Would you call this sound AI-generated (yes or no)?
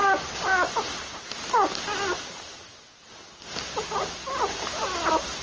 no